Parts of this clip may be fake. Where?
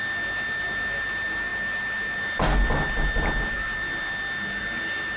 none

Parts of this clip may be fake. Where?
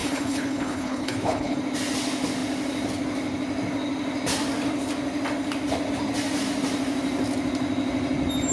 0.0-1.6 (codec, HILCodec)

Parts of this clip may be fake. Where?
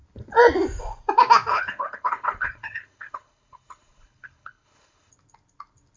1.5-5.1 (codec, HILCodec)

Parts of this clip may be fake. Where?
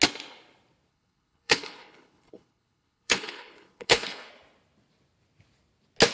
0.9-4.3 (codec, HILCodec)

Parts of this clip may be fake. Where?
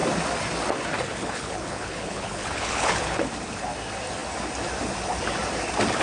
1.1-3.2 (codec, HILCodec)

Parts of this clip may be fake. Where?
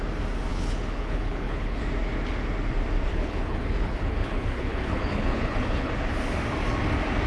0.5-1.8 (codec, HILCodec); 3.1-5.9